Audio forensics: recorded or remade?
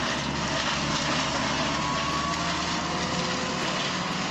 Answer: recorded